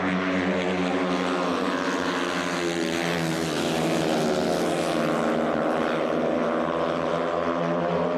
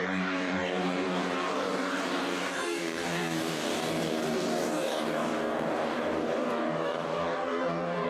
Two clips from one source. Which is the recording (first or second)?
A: first